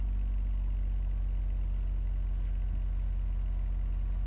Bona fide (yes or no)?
yes